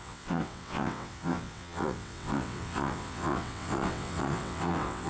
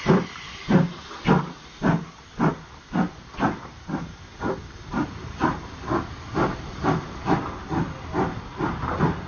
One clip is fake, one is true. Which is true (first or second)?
second